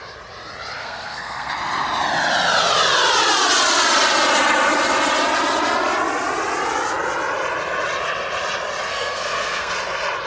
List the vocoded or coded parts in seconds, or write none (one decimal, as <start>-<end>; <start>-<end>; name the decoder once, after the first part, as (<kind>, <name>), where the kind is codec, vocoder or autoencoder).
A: 0.8-1.5 (codec, SNAC); 8.9-9.7